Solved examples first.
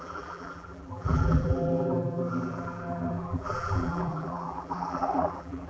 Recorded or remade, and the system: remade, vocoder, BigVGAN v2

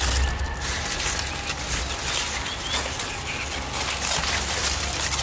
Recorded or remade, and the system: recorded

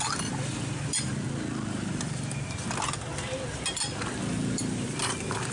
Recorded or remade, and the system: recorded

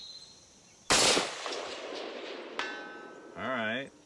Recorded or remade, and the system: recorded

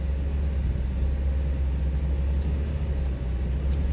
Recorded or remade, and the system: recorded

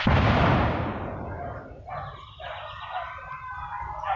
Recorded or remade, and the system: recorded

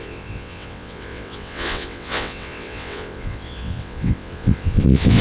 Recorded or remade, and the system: remade, vocoder, WaveNeXt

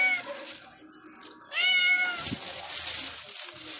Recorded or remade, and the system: recorded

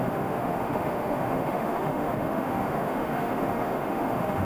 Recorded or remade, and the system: remade, autoencoder, DAC-VAE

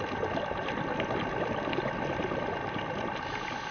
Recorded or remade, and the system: recorded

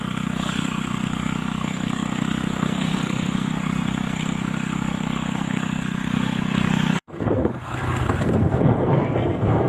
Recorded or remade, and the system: remade, codec, SNAC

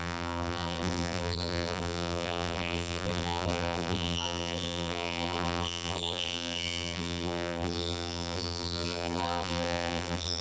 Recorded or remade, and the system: remade, vocoder, BigVGAN v2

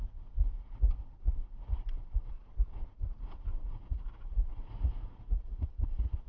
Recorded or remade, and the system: remade, vocoder, Vocos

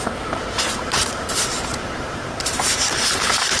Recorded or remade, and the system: recorded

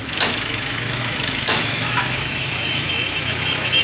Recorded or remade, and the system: remade, autoencoder, DAC-VAE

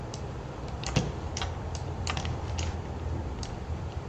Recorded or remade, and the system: remade, vocoder, BigVGAN v2